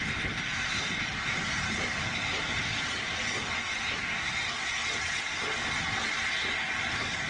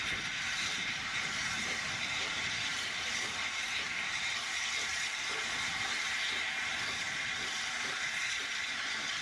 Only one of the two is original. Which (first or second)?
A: first